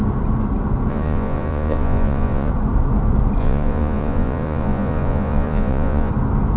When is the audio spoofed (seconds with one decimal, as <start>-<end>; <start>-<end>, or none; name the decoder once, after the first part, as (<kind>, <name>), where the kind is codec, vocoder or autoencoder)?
0.9-2.5 (vocoder, Vocos); 3.4-6.1